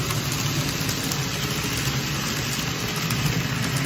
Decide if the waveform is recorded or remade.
recorded